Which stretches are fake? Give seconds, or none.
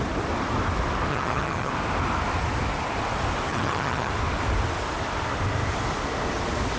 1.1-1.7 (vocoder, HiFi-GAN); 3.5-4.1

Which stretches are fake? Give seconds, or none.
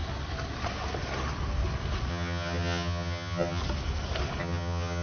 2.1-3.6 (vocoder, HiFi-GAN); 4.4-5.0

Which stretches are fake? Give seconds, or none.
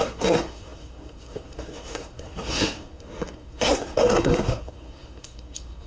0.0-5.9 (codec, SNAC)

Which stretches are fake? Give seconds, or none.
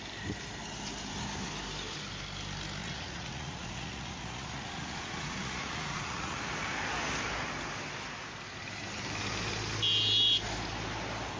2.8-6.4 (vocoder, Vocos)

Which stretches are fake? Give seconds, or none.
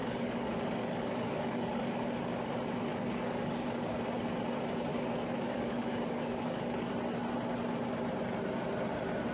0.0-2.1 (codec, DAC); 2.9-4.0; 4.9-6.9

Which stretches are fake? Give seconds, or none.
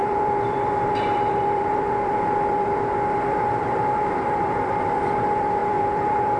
0.0-6.4 (vocoder, BigVGAN v2)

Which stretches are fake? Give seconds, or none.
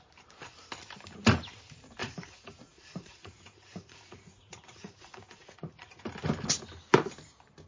2.0-6.0 (vocoder, Vocos)